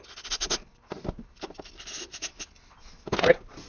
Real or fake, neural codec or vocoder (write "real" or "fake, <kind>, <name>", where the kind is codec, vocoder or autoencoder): real